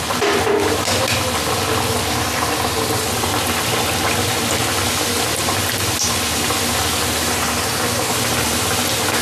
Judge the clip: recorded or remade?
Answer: recorded